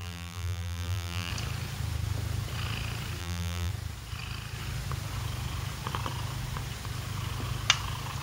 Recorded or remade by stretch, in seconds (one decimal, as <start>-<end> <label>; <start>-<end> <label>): 0.0-1.3 remade; 1.3-3.2 recorded; 3.2-3.7 remade; 3.7-8.2 recorded